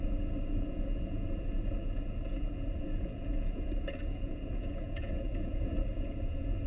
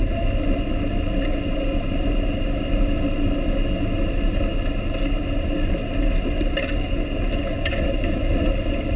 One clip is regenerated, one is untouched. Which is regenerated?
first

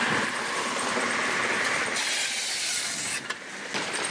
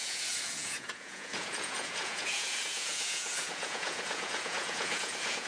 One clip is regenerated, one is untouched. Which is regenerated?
second